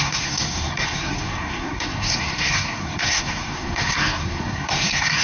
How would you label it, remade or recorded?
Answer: remade